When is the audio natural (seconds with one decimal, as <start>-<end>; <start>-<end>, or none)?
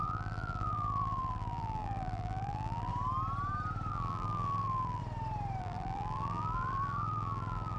2.9-3.9; 5.0-5.6